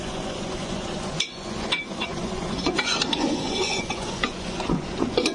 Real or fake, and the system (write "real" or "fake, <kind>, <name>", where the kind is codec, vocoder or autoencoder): fake, vocoder, Vocos